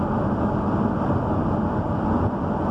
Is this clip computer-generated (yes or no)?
no